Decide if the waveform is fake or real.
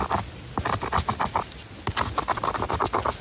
real